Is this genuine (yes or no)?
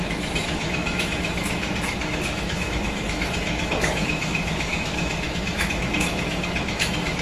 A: no